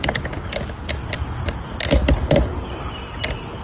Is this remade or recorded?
recorded